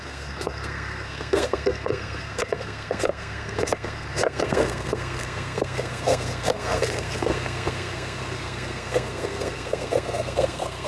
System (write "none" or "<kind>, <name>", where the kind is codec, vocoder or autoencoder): codec, SNAC